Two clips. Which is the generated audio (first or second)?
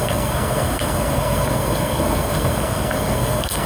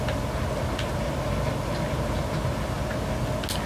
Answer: first